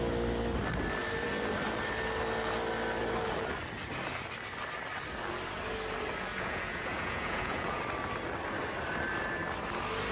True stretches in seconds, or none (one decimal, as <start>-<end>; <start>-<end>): 0.0-6.3; 7.8-10.1